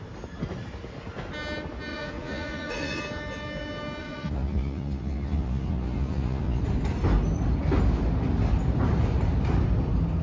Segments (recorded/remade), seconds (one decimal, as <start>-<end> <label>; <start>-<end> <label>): 0.0-1.9 recorded; 1.9-3.0 remade; 3.0-4.0 recorded; 4.0-6.6 remade; 6.6-10.2 recorded